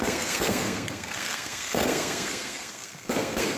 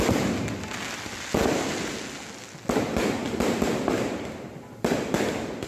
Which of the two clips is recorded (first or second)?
second